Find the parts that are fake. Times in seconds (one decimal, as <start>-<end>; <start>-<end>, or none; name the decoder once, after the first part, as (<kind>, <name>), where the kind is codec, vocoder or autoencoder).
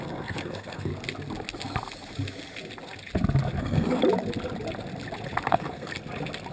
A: 0.0-0.9 (codec, SNAC); 3.6-4.0; 5.5-5.9